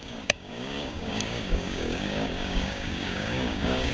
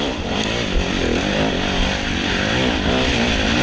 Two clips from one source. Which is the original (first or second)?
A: second